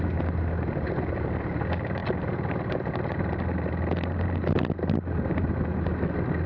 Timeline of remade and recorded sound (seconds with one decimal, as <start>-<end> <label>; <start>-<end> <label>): 0.0-6.5 recorded